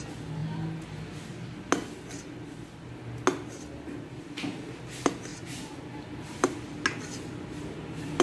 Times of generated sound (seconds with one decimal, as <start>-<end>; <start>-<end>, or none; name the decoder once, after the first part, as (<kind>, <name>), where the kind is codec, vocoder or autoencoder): none